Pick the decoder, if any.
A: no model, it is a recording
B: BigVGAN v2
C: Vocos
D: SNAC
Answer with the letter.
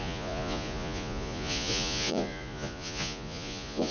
C